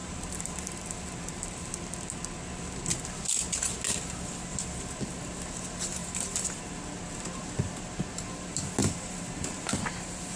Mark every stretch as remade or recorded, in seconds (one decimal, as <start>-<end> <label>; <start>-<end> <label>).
0.0-1.7 remade; 1.7-6.0 recorded; 6.0-6.6 remade; 6.6-8.8 recorded; 8.8-9.8 remade; 9.8-10.4 recorded